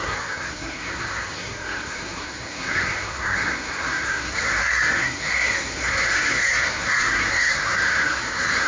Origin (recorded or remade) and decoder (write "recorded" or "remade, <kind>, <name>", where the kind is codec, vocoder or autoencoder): remade, codec, SNAC